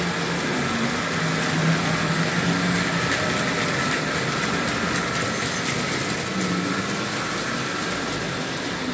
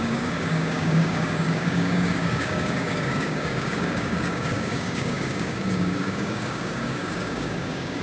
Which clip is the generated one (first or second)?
second